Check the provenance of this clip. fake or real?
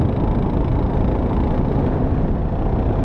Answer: real